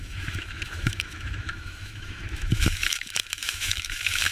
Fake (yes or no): yes